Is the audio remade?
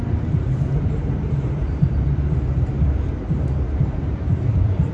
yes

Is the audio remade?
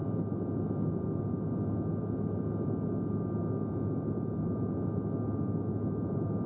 no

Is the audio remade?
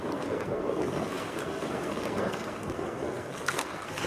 yes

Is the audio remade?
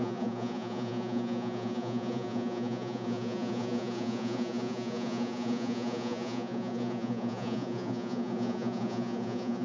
yes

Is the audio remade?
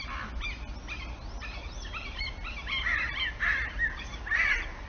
no